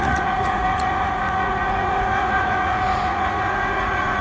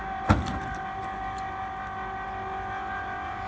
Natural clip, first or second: second